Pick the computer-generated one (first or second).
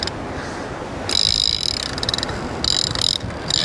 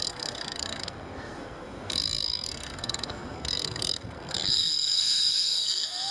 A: second